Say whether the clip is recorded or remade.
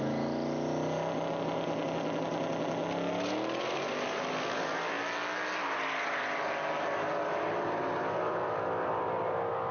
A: recorded